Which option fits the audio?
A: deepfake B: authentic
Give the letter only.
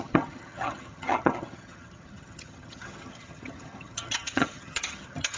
A